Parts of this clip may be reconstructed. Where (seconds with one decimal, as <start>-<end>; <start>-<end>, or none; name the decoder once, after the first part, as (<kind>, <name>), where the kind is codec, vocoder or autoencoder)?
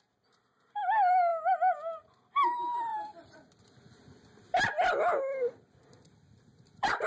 none